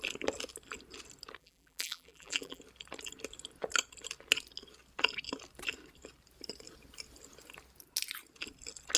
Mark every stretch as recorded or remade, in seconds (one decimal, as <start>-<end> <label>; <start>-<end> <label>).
0.0-1.4 recorded; 1.4-2.6 remade; 2.6-9.0 recorded